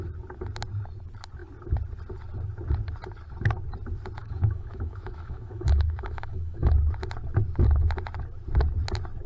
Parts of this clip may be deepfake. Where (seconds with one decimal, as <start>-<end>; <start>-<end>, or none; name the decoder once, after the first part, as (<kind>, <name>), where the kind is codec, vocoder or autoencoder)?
4.2-6.7 (autoencoder, DAC-VAE)